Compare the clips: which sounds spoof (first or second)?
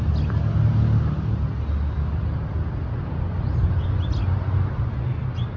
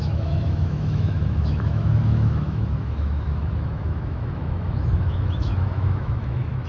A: second